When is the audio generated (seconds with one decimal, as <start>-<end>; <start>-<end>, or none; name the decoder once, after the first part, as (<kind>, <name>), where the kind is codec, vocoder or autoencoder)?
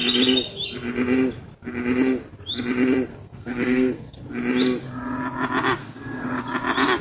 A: 3.1-4.2 (codec, SNAC); 5.8-6.4